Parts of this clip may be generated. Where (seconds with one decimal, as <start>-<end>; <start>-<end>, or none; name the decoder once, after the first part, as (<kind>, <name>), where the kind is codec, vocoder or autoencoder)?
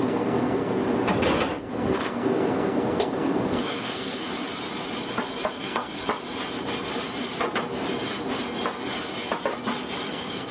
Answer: 0.0-0.8 (codec, SNAC); 1.6-4.3; 5.5-6.0; 10.1-10.5